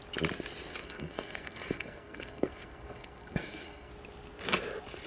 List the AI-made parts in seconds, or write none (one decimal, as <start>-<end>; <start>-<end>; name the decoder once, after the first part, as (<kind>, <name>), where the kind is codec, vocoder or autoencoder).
0.8-3.9 (codec, SNAC)